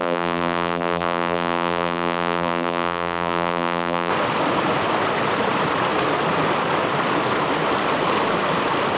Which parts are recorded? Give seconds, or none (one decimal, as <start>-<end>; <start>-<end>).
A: 4.1-9.0